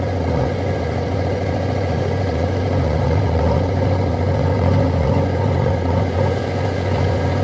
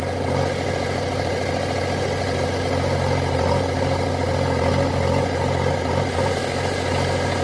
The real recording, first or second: second